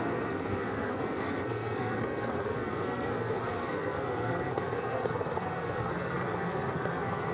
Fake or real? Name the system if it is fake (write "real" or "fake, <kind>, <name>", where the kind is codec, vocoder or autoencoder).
fake, codec, SNAC